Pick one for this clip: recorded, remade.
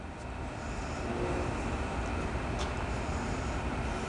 recorded